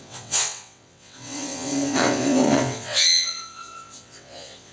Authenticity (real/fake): fake